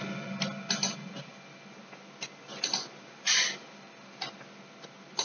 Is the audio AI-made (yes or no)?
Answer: no